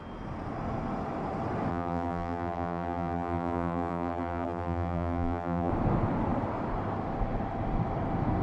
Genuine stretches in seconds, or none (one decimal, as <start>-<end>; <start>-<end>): 0.0-1.7; 5.7-8.4